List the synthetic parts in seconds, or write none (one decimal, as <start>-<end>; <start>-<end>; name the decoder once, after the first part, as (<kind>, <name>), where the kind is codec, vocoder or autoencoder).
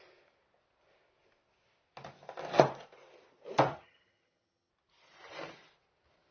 3.7-4.7 (vocoder, HiFi-GAN)